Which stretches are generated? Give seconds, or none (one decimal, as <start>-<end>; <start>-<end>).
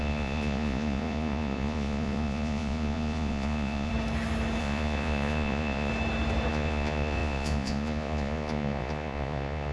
0.0-3.9; 4.6-5.9; 6.5-9.7